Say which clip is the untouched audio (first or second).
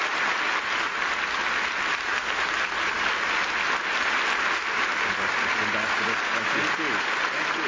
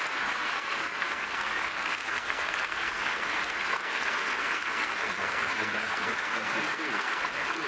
first